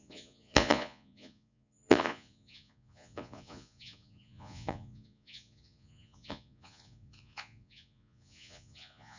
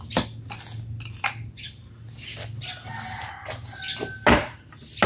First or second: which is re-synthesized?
first